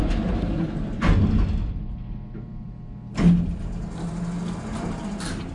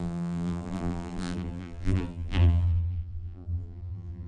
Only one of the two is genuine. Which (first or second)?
first